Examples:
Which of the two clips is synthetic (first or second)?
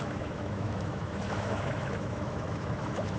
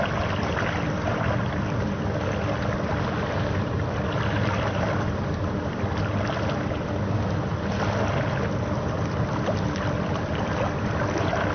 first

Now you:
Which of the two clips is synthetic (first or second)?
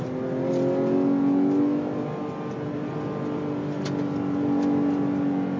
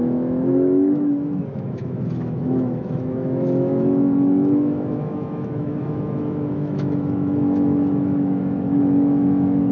second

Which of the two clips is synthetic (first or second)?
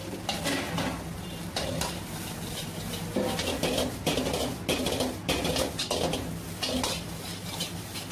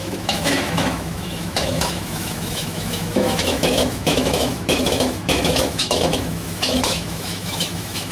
second